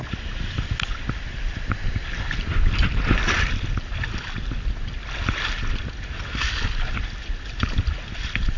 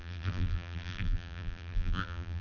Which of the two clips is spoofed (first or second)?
second